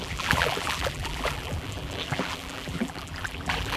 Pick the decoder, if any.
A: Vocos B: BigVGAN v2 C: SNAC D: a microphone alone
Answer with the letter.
B